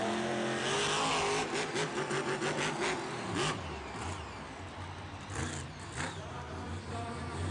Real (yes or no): yes